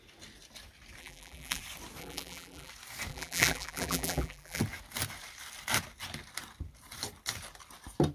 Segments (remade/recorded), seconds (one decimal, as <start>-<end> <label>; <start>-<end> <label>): 0.0-1.0 recorded; 1.0-1.6 remade; 1.6-2.0 recorded; 2.0-2.7 remade; 2.7-3.1 recorded; 3.1-4.6 remade; 4.6-8.1 recorded